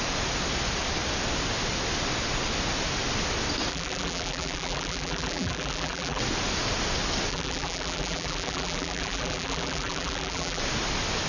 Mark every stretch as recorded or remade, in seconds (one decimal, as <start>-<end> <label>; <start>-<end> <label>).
0.0-3.7 recorded; 3.7-6.2 remade; 6.2-7.3 recorded; 7.3-10.6 remade; 10.6-11.3 recorded